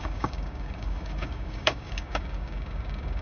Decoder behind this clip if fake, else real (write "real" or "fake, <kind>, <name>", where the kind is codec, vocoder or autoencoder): fake, codec, DAC